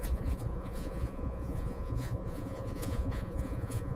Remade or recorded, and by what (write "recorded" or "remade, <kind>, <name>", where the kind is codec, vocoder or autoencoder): remade, vocoder, Vocos